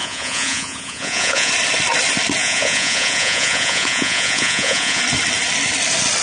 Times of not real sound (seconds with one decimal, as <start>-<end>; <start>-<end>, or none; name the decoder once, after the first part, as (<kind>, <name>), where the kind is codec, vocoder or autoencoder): 0.0-1.5 (vocoder, Vocos); 2.4-5.0